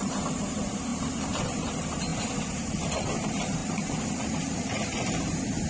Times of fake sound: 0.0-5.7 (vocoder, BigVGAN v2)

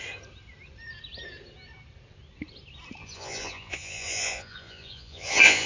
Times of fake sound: 3.0-5.7 (vocoder, Vocos)

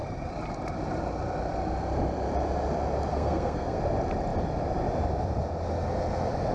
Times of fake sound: 3.1-3.8 (codec, SNAC)

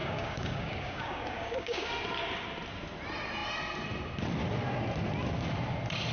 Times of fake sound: 0.0-1.9 (codec, DAC)

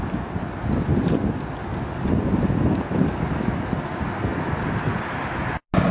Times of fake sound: none

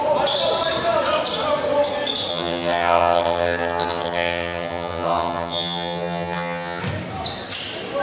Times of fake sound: 2.3-6.8 (vocoder, HiFi-GAN)

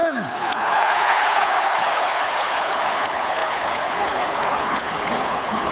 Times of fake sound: 0.0-5.7 (codec, HILCodec)

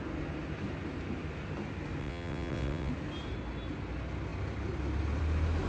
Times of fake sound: 2.0-2.9 (vocoder, WaveNeXt)